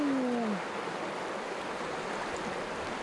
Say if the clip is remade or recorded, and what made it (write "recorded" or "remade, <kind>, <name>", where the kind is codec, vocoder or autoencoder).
recorded